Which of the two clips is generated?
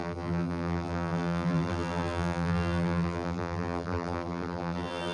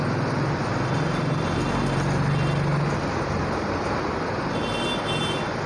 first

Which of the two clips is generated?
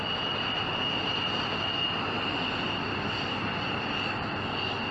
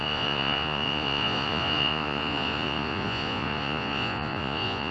second